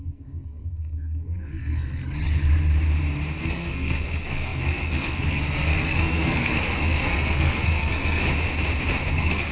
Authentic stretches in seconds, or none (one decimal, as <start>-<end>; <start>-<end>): 2.0-3.4; 8.2-9.1

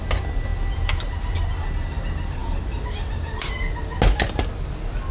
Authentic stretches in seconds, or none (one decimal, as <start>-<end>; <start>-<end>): 0.0-5.1